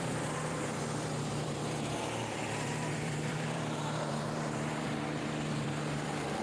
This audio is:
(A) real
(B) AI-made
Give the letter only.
B